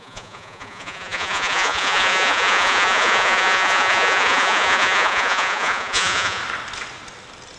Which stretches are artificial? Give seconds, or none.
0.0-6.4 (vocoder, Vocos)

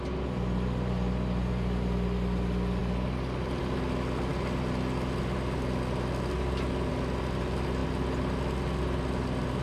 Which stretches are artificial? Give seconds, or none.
none